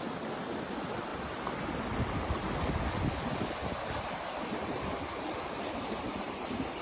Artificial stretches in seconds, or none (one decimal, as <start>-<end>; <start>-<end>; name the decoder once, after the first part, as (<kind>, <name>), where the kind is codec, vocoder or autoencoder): 3.6-6.8 (vocoder, BigVGAN v2)